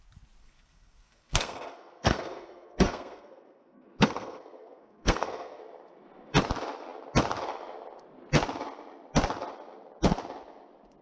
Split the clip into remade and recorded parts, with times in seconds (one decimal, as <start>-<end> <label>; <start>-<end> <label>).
0.0-0.4 recorded; 0.4-5.6 remade; 5.6-11.0 recorded

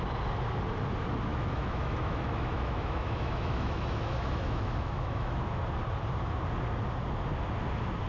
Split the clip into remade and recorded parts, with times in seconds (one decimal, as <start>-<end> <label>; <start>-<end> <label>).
0.0-1.3 recorded; 1.3-5.6 remade; 5.6-8.1 recorded

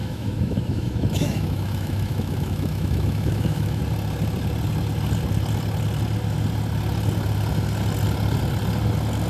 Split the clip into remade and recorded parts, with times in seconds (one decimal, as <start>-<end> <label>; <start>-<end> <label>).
0.0-3.8 remade; 3.8-9.3 recorded